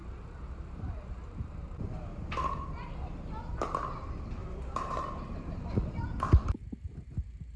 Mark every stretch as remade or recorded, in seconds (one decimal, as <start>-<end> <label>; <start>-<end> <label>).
0.0-2.2 remade; 2.2-4.4 recorded; 4.4-6.0 remade; 6.0-7.6 recorded

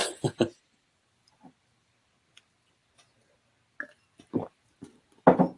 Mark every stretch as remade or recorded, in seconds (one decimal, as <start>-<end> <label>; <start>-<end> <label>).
0.0-2.8 remade; 2.8-5.6 recorded

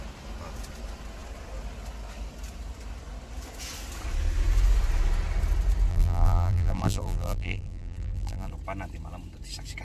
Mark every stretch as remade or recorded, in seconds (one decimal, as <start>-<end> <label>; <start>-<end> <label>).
0.0-5.9 recorded; 5.9-8.5 remade; 8.5-9.8 recorded